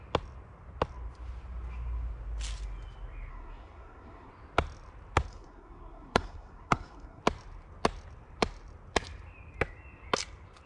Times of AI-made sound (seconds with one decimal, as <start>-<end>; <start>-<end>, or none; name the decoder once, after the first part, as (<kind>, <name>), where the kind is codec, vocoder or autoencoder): 3.3-4.3 (codec, SNAC); 5.3-7.2